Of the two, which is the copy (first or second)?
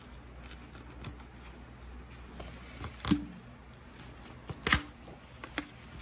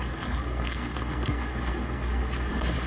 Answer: second